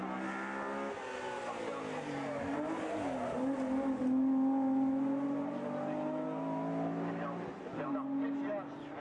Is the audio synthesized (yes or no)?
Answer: no